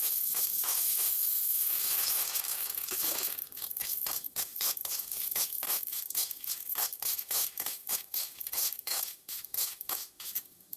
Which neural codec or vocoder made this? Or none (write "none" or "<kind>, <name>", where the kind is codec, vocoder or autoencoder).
autoencoder, DAC-VAE